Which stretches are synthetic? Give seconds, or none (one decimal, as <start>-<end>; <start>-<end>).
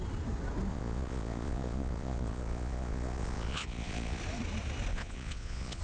0.7-4.2; 4.9-5.8